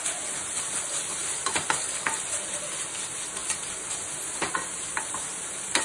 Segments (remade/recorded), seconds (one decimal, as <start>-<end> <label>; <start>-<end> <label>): 0.0-5.8 recorded